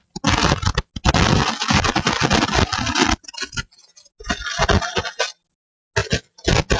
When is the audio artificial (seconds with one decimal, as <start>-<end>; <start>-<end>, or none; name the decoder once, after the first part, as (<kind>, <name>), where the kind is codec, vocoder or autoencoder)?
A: none